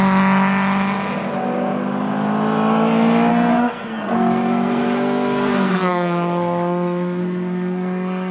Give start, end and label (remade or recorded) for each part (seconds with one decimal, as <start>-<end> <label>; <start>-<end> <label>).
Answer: 0.0-3.3 recorded; 3.3-8.3 remade